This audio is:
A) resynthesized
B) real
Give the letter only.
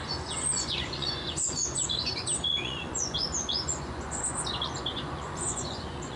A